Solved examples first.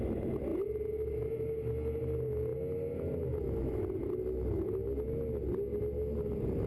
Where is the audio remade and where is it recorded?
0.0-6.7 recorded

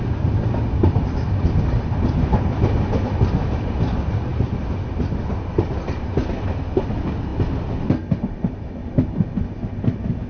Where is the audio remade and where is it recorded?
0.0-10.3 recorded